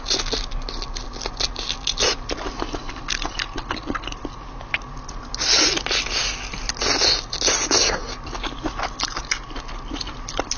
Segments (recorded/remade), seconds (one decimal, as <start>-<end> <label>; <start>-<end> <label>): 0.0-10.6 recorded